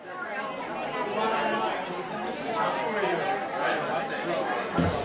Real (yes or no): yes